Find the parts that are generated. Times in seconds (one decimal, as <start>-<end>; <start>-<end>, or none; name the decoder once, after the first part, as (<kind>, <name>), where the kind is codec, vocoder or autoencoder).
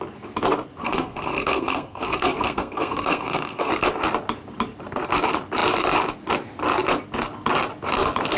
0.8-3.7 (codec, SNAC)